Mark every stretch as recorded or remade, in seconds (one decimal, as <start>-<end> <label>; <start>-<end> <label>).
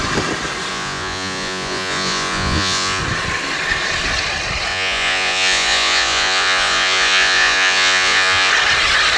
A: 0.0-0.7 recorded; 0.7-3.0 remade; 3.0-4.7 recorded; 4.7-8.5 remade; 8.5-9.2 recorded